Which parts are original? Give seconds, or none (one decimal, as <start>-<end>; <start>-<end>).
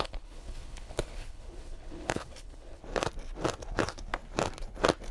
2.8-5.1